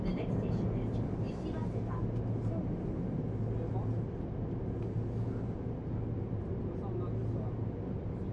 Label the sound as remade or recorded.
recorded